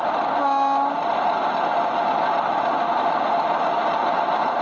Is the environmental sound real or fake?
real